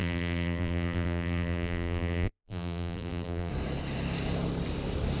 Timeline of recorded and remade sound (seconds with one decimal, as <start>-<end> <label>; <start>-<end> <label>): 0.0-3.5 remade; 3.5-5.2 recorded